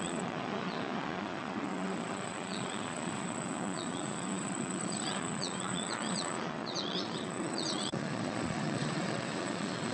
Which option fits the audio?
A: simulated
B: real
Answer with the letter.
A